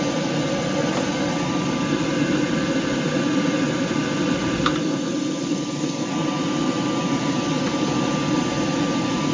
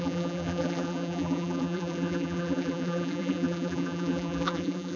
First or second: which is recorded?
first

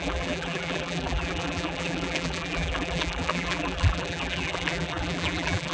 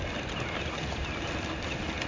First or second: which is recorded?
second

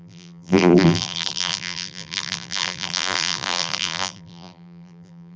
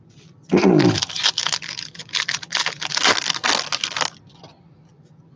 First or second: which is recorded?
second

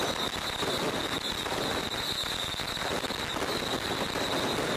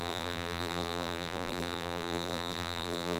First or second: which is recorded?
first